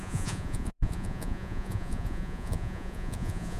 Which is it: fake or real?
fake